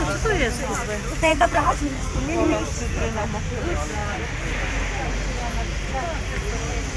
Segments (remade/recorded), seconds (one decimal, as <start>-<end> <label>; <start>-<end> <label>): 0.0-1.3 recorded; 1.3-2.2 remade; 2.2-7.0 recorded